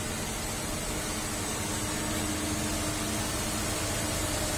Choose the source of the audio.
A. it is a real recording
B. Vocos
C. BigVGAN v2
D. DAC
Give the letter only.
A